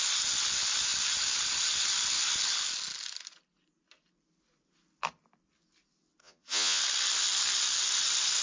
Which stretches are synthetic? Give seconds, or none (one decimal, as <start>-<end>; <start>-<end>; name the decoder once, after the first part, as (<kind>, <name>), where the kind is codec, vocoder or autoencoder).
6.2-6.8 (vocoder, Vocos)

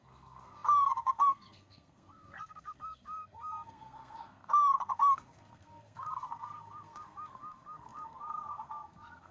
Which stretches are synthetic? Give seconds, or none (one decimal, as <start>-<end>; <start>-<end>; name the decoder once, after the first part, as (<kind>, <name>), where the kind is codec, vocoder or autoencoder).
0.0-9.3 (codec, SNAC)

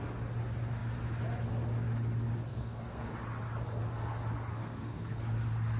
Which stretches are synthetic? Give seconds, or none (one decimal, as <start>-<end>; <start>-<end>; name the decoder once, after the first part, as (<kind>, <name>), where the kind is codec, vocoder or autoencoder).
2.5-3.1 (codec, SNAC); 4.5-5.2

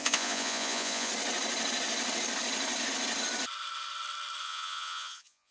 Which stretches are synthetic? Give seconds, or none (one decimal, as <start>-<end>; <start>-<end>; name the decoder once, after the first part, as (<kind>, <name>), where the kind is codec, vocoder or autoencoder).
0.0-1.1 (vocoder, Vocos); 4.4-5.5

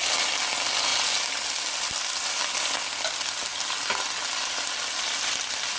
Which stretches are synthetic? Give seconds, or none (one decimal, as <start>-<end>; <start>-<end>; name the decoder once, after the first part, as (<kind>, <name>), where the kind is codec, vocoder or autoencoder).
none

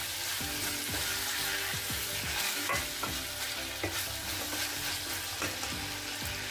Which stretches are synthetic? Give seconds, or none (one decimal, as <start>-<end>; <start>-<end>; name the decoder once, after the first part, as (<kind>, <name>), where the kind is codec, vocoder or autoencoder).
none

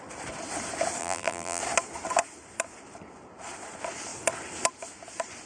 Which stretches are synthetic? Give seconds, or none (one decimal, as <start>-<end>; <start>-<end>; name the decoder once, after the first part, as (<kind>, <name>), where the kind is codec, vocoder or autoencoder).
1.0-1.6 (vocoder, BigVGAN v2)